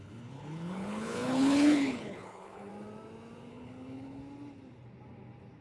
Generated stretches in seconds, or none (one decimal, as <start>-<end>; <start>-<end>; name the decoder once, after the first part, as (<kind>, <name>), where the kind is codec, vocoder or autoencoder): 0.0-2.7 (codec, HILCodec); 3.5-4.2